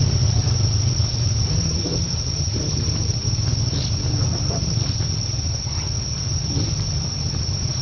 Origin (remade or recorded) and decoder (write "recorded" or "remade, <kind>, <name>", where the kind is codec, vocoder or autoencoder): remade, vocoder, BigVGAN v2